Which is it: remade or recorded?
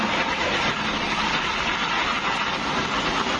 recorded